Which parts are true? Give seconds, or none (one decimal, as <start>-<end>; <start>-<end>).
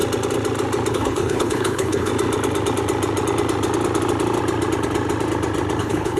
0.0-0.9; 2.1-5.8